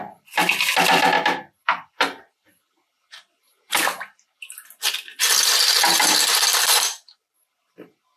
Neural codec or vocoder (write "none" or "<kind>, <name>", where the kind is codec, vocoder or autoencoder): none